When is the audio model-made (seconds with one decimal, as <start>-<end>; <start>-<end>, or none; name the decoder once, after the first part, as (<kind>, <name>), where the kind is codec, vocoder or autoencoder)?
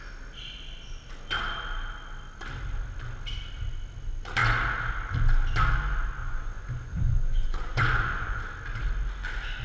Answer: 6.2-8.4 (vocoder, Vocos)